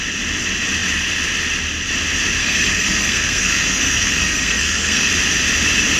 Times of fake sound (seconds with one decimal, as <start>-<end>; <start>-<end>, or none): 2.4-5.1